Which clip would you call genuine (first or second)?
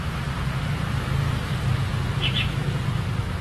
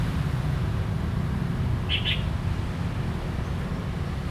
second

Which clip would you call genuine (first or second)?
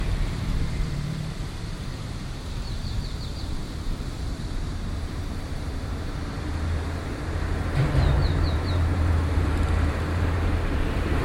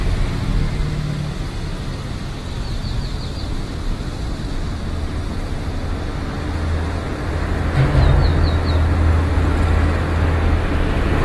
second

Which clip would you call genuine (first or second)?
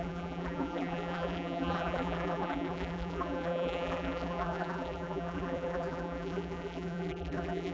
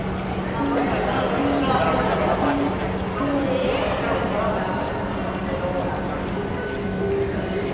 second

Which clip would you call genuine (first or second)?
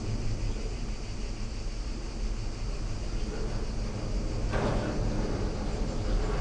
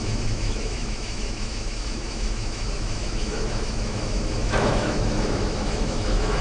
first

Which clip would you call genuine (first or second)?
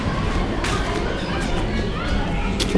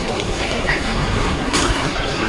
first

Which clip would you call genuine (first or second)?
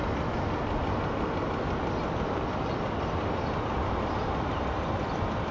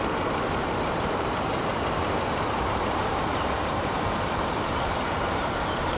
first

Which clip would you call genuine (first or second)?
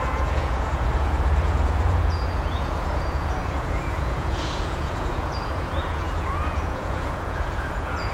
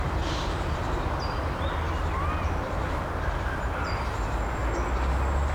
second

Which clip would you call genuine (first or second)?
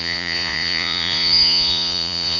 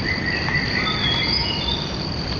second